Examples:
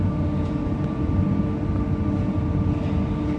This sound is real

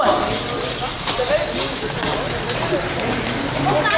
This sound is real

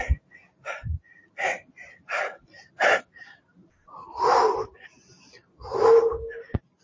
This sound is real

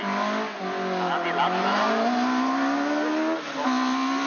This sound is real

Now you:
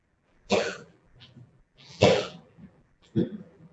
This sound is fake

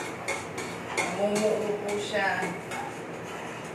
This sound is real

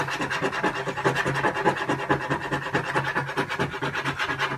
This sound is real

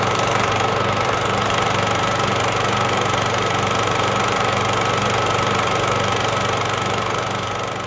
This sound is fake